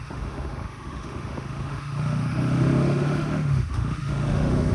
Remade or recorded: remade